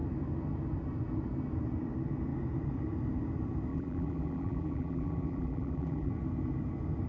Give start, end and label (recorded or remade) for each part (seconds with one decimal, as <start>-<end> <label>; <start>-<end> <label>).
0.0-3.7 recorded; 3.7-6.1 remade; 6.1-7.1 recorded